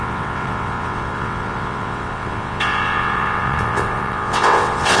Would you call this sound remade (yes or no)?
yes